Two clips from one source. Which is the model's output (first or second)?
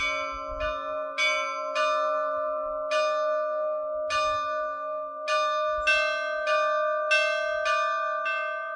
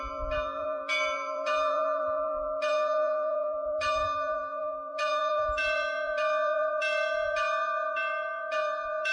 second